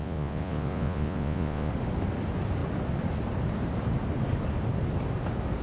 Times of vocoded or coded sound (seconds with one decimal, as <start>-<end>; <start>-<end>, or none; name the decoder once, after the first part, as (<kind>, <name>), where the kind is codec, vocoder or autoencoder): 0.0-1.7 (vocoder, Vocos)